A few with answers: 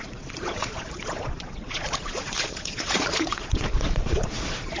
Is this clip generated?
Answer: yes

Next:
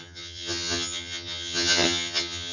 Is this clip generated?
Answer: yes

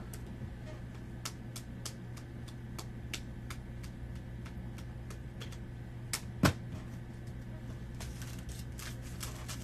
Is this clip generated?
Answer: no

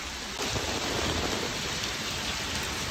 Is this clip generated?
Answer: no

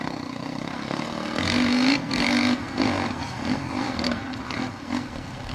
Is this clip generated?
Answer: yes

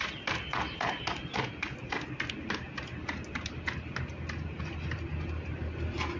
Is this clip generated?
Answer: no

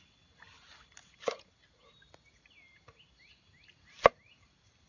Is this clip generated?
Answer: no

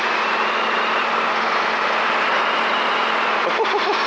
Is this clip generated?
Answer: no